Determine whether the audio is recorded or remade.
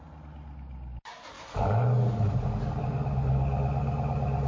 recorded